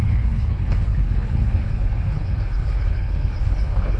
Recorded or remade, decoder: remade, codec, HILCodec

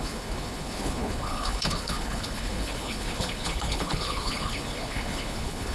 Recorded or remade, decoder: remade, codec, HILCodec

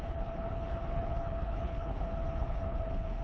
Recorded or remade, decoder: remade, codec, HILCodec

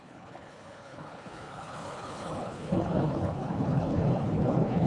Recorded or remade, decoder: remade, codec, HILCodec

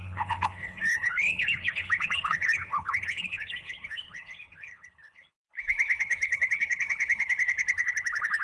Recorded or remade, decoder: remade, codec, HILCodec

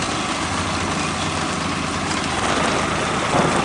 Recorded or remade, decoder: recorded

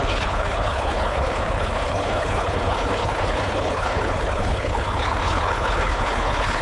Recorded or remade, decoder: remade, codec, HILCodec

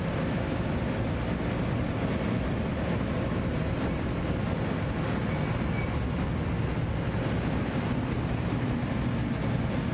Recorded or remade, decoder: recorded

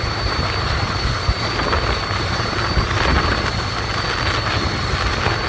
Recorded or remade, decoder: recorded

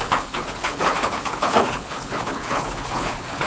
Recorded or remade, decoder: remade, codec, HILCodec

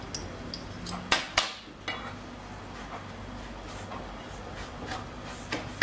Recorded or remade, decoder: recorded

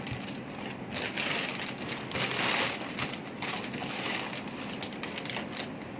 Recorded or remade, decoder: recorded